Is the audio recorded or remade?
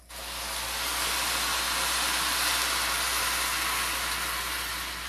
recorded